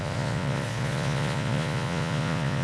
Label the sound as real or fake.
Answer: fake